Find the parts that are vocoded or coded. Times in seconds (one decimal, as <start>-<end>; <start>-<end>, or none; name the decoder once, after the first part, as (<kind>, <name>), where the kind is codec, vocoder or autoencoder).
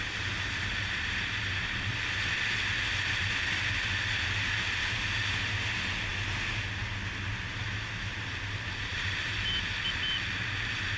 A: 7.6-8.1 (autoencoder, DAC-VAE)